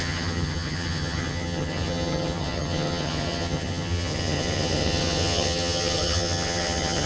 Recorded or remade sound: remade